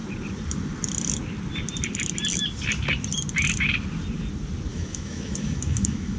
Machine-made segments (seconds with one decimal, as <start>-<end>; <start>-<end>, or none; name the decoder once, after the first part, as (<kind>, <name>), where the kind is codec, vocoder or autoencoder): 4.7-6.2 (autoencoder, DAC-VAE)